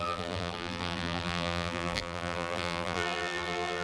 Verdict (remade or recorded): remade